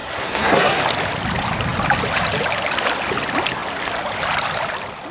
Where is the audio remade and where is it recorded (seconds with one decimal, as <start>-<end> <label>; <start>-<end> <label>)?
0.0-0.8 remade; 0.8-5.1 recorded